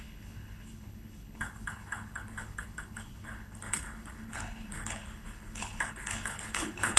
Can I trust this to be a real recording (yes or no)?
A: no